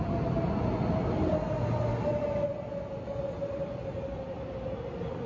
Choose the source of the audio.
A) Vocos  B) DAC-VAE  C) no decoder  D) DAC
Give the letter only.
C